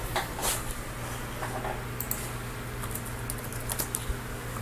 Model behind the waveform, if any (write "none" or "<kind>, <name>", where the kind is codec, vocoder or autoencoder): none